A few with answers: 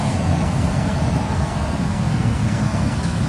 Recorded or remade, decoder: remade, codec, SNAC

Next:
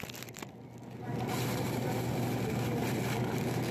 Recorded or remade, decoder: recorded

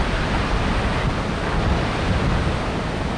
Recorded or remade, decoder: recorded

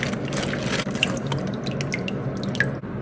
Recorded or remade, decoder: recorded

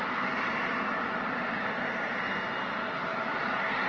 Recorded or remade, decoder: recorded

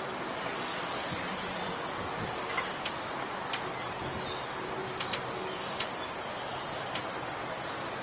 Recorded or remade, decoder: remade, vocoder, BigVGAN v2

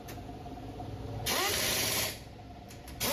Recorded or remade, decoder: recorded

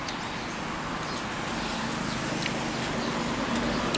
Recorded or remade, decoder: recorded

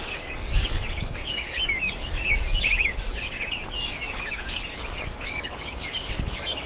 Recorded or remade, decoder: remade, codec, DAC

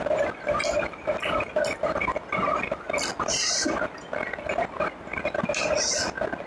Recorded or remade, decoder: recorded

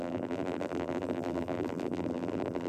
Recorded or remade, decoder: remade, vocoder, BigVGAN v2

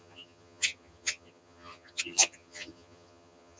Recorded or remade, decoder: remade, vocoder, HiFi-GAN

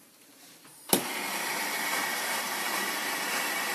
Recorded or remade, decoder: remade, vocoder, BigVGAN v2